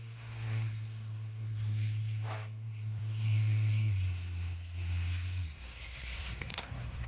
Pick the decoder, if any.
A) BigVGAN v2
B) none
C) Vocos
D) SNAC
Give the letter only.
D